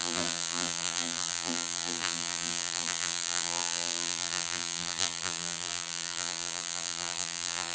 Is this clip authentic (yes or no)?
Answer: no